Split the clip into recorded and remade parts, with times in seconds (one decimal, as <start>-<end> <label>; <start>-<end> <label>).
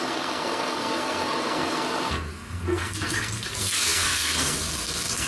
0.0-5.3 remade